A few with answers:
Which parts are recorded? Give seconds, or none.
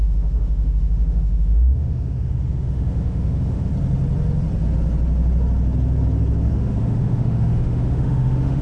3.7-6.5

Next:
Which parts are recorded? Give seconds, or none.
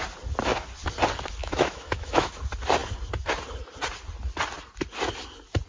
0.0-1.4; 2.4-5.7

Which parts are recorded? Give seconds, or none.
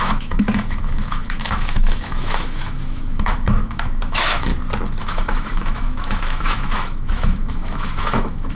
4.5-5.0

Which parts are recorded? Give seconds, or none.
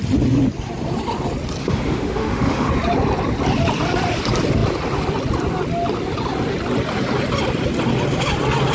0.0-1.6; 2.7-8.7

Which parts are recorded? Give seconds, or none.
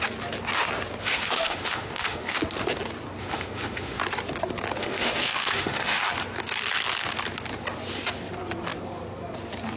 0.0-1.0; 2.4-3.2; 4.0-4.8; 6.0-9.8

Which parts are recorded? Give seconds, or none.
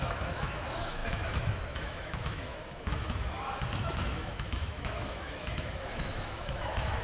none